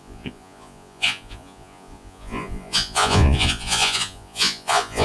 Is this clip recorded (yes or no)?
no